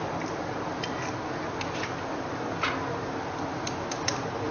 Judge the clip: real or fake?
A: real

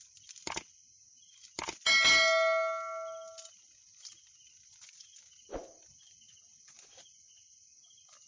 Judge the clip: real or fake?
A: real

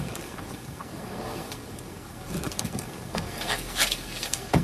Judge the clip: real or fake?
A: fake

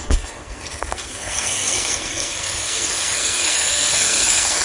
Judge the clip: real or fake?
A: fake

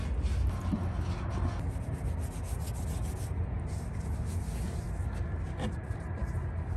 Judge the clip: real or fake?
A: real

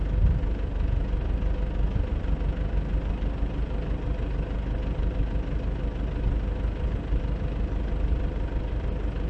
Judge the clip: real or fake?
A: real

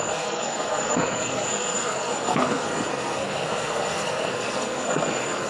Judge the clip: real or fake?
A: fake